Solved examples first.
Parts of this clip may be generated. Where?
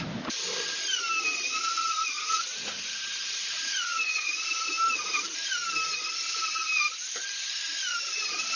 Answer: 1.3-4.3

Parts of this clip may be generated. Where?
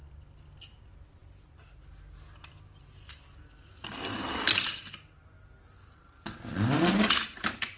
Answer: none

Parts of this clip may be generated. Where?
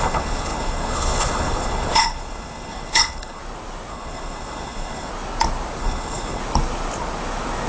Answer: 0.0-3.4; 3.9-5.1; 5.8-6.4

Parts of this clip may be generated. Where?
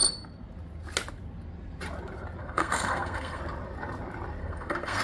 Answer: 2.4-3.4; 4.4-5.0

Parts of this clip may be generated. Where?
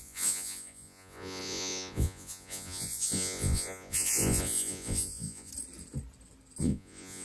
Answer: 0.0-5.5; 6.6-7.2